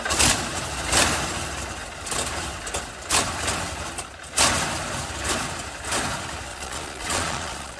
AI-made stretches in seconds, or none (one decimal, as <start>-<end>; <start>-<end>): 6.5-7.8